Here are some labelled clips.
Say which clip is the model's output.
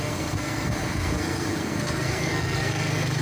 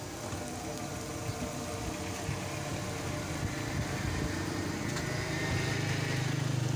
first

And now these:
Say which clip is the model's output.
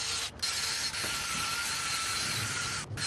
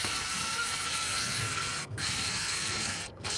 second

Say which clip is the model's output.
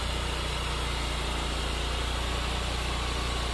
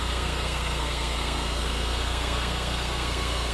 second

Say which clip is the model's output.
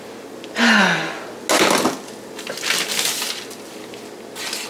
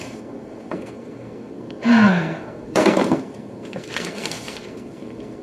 second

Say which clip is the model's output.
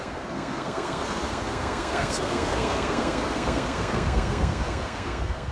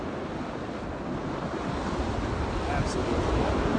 first